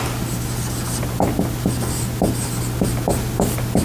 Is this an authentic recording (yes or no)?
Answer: yes